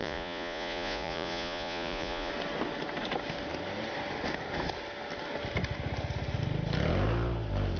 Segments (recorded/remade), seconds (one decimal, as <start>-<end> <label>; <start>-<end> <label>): 0.0-2.3 remade; 2.3-7.8 recorded